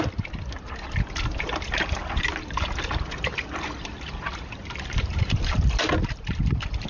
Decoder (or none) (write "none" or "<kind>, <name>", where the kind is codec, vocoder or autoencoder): none